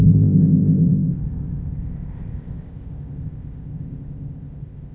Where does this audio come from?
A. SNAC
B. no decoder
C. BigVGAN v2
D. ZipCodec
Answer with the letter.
D